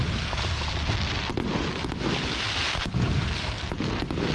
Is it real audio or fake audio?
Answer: fake